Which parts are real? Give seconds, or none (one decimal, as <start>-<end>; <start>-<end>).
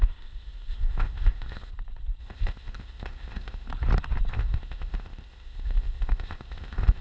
1.7-2.2; 3.7-4.3